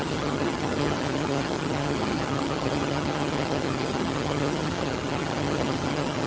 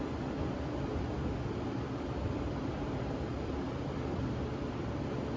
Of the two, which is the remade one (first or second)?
first